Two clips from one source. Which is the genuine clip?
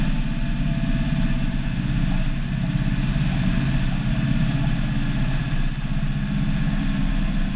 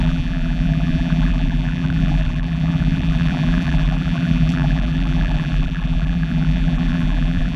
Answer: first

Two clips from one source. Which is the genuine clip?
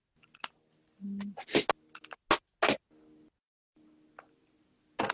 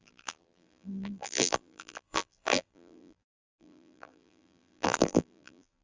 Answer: first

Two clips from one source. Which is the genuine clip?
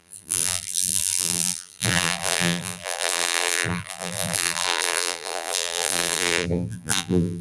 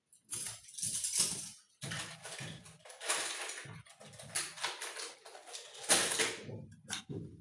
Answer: second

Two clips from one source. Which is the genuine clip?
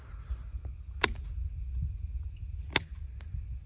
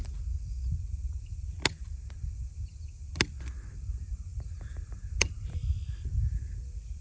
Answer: first